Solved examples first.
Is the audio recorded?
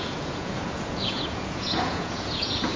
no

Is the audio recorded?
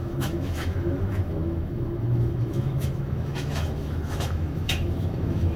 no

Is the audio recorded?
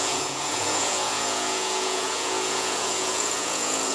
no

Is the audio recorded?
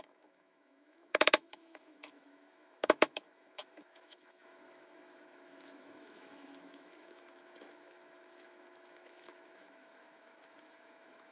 no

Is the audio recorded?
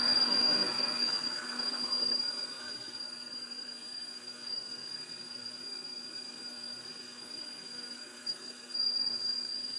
no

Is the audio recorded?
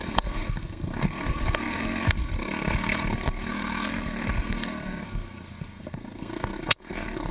no